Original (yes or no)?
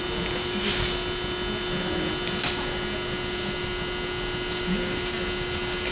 yes